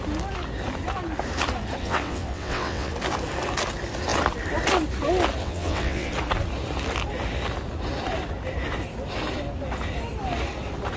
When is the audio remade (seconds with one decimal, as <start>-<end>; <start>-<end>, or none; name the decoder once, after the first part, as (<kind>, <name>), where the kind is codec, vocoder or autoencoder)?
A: 1.8-2.9 (vocoder, WaveNeXt); 5.4-6.1